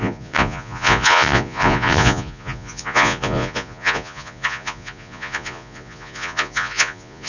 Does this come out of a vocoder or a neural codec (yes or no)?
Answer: yes